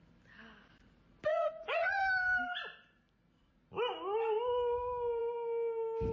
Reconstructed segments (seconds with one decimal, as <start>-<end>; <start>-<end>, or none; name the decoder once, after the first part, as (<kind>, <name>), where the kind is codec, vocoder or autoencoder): 1.3-2.0 (vocoder, Vocos)